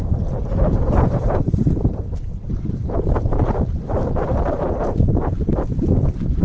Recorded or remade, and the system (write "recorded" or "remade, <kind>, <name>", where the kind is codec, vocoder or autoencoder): remade, vocoder, BigVGAN v2